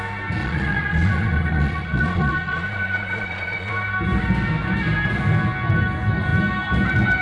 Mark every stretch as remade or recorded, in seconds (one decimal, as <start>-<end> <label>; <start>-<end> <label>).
0.0-0.4 recorded; 0.4-3.7 remade; 3.7-7.2 recorded